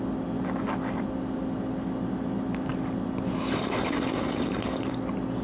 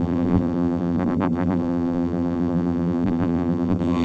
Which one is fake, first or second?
second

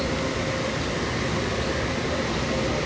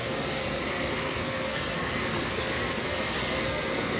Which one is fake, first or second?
second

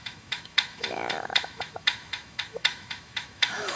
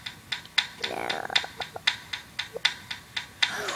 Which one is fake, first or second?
first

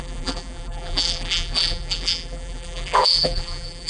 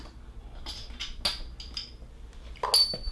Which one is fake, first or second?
first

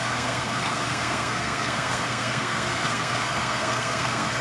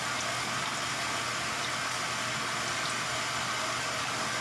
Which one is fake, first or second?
first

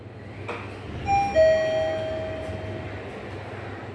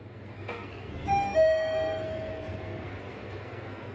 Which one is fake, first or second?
second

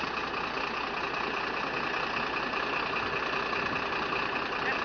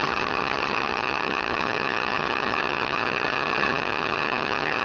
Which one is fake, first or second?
second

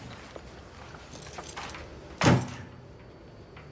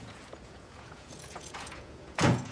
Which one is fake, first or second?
second